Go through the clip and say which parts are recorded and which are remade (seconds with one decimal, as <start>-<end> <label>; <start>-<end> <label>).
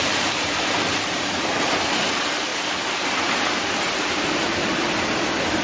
0.0-2.5 remade; 2.5-5.6 recorded